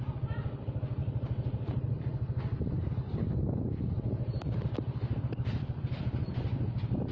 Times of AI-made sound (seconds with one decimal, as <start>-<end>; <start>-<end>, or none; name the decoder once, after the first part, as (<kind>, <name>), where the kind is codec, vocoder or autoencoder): 1.0-5.2 (vocoder, BigVGAN v2)